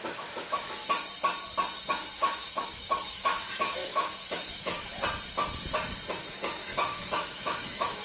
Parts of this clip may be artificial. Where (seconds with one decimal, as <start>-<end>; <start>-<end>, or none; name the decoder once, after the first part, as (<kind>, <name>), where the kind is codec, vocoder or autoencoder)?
0.0-0.8 (autoencoder, DAC-VAE); 1.8-4.9; 6.2-8.0